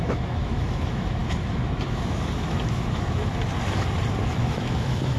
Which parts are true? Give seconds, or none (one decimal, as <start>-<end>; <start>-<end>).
3.3-4.2